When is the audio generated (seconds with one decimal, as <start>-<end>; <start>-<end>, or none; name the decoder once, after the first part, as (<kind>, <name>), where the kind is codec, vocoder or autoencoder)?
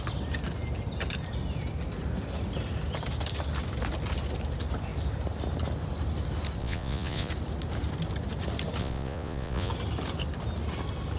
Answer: 6.6-7.3 (vocoder, Vocos); 8.8-9.7